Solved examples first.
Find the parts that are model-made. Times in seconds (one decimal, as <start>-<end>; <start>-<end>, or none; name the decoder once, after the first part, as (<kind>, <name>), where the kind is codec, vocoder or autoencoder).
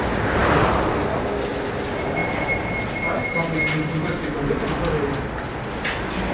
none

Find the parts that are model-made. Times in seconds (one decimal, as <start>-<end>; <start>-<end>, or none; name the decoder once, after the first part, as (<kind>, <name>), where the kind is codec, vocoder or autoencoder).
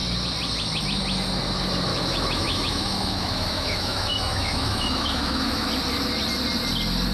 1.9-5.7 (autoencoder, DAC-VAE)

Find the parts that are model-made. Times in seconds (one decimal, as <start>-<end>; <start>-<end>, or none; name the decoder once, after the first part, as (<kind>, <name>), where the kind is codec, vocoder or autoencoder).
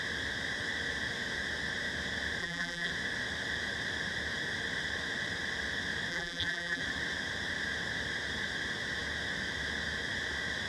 2.4-2.9 (vocoder, BigVGAN v2); 6.1-6.8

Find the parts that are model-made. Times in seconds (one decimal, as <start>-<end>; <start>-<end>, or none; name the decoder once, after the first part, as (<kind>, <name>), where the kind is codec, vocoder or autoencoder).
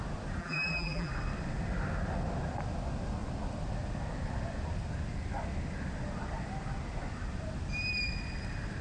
0.4-1.1 (vocoder, BigVGAN v2)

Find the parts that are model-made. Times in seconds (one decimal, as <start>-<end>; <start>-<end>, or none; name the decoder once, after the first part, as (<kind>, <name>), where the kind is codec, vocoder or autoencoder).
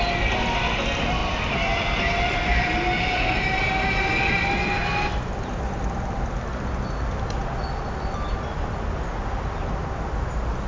1.2-3.3 (vocoder, BigVGAN v2)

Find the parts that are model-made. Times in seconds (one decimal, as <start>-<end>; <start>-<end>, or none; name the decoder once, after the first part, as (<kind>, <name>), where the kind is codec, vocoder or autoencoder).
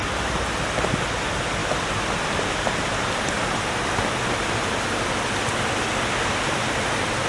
none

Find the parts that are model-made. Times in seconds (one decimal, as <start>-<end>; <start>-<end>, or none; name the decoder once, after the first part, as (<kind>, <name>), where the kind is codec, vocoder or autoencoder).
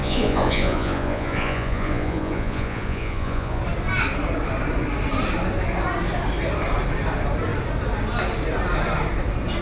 0.0-3.6 (vocoder, Vocos)